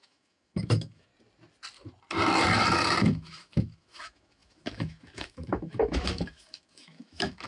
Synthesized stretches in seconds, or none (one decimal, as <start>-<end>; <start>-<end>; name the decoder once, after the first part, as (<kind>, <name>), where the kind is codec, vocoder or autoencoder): 0.0-1.1 (autoencoder, DAC-VAE); 3.0-7.5